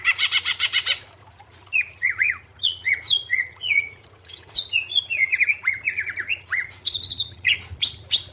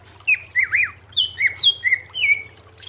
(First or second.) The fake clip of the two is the first